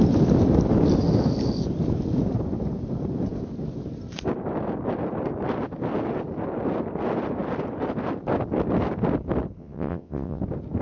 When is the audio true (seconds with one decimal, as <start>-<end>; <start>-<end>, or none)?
0.0-9.6; 10.4-10.8